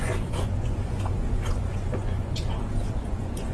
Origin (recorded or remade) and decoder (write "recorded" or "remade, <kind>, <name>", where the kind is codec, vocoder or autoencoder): remade, vocoder, Vocos